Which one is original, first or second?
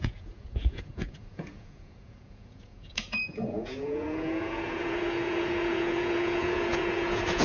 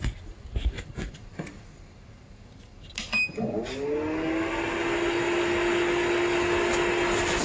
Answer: second